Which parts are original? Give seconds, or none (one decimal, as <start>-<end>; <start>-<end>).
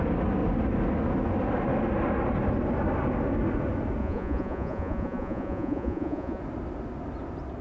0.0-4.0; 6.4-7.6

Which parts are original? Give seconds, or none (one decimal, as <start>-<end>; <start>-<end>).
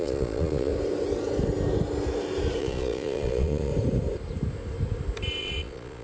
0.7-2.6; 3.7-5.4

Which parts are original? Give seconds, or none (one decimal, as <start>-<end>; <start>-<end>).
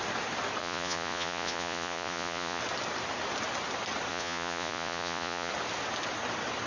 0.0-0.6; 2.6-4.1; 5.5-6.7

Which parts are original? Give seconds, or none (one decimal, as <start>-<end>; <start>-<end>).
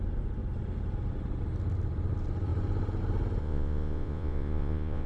0.0-3.4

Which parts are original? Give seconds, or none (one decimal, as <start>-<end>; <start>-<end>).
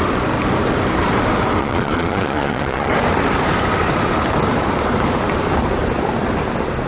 0.0-1.6; 2.9-6.9